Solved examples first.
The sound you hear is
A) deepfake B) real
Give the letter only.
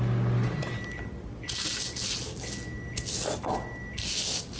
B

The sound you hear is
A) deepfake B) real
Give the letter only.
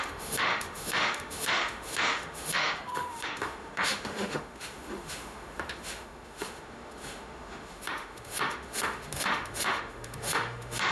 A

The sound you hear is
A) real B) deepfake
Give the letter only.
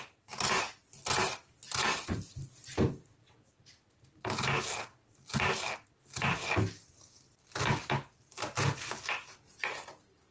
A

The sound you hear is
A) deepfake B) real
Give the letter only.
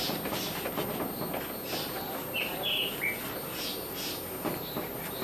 B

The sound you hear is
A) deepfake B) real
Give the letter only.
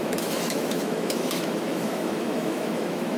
A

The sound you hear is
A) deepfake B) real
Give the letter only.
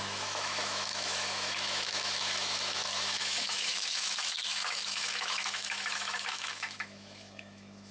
A